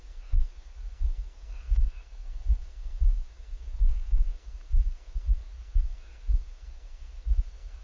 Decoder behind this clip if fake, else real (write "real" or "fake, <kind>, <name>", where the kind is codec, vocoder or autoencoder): fake, codec, SNAC